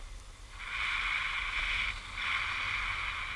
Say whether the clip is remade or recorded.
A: recorded